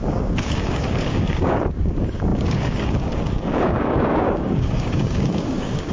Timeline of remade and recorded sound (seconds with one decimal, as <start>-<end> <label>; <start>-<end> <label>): 0.0-5.9 remade